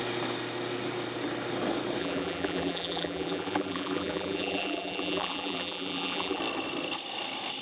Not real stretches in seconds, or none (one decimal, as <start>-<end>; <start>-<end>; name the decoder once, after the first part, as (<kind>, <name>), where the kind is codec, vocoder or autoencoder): 2.0-6.4 (vocoder, BigVGAN v2)